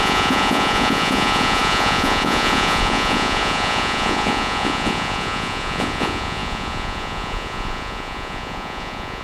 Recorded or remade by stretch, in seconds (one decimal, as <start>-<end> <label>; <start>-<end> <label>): 0.0-9.2 remade